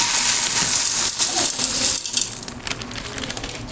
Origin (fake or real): real